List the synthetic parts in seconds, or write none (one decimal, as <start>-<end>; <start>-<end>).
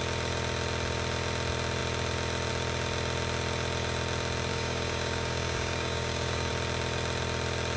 4.5-6.5